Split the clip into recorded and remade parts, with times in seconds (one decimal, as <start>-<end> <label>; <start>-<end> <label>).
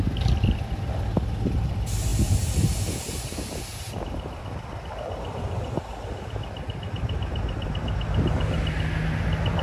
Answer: 0.0-9.6 recorded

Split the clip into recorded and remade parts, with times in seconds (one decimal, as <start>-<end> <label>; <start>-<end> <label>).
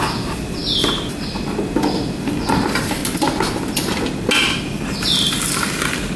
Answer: 0.0-0.6 remade; 0.6-2.2 recorded; 2.2-3.0 remade; 3.0-4.6 recorded; 4.6-6.2 remade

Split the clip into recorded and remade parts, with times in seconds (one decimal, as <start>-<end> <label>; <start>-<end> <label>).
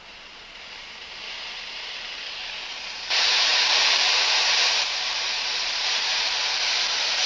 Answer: 0.0-7.3 remade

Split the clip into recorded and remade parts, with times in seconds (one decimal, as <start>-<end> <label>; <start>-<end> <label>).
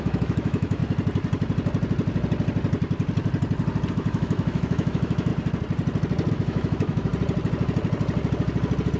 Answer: 0.0-0.8 remade; 0.8-3.9 recorded; 3.9-5.3 remade; 5.3-6.3 recorded; 6.3-7.1 remade; 7.1-9.0 recorded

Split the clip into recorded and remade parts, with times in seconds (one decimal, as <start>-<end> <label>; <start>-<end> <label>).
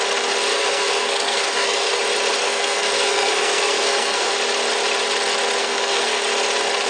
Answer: 0.0-0.5 recorded; 0.5-2.0 remade; 2.0-2.4 recorded; 2.4-4.3 remade; 4.3-5.6 recorded; 5.6-6.2 remade; 6.2-6.9 recorded